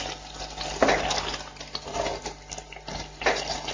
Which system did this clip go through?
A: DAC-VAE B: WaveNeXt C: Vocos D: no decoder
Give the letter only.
D